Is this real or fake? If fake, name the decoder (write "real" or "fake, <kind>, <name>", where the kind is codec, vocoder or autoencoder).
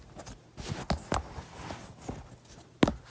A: real